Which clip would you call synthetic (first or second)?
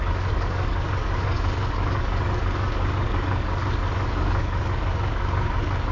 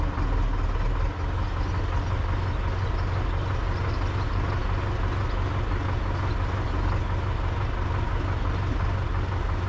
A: first